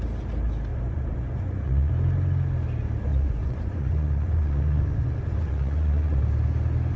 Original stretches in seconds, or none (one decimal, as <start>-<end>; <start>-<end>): 0.0-0.7; 1.9-3.1; 6.2-7.0